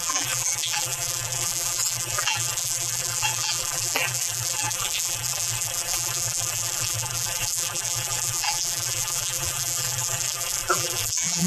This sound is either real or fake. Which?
fake